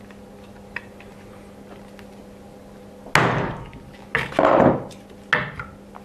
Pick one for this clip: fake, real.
real